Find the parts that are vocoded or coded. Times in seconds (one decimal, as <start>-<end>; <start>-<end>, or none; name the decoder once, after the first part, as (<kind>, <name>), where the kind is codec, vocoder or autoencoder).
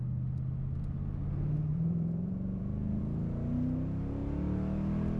1.7-3.0 (vocoder, Vocos)